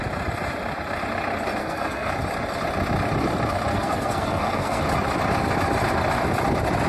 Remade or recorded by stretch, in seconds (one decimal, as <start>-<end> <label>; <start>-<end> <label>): 0.0-1.6 recorded; 1.6-2.1 remade; 2.1-3.7 recorded; 3.7-4.8 remade; 4.8-6.9 recorded